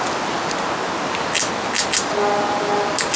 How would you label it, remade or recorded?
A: recorded